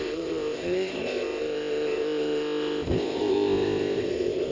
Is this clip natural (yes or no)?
no